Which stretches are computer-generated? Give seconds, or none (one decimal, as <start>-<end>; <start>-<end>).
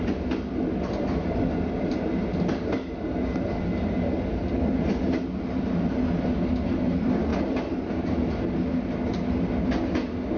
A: none